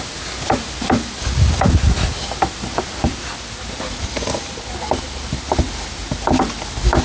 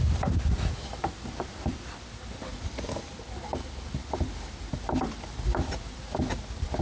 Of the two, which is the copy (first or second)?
second